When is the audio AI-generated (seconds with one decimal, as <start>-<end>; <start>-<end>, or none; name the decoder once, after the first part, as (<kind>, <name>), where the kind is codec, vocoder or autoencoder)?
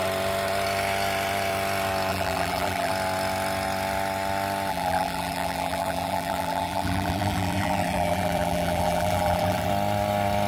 2.1-2.9 (vocoder, BigVGAN v2); 4.7-9.7